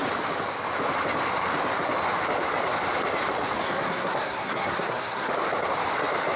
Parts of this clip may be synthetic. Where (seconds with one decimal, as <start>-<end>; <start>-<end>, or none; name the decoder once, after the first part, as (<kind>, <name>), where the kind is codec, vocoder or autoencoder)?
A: 3.6-5.3 (codec, SNAC)